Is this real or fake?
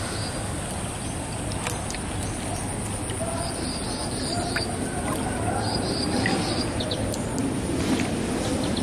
real